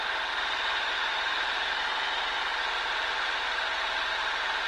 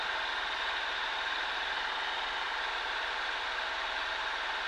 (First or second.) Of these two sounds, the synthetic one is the second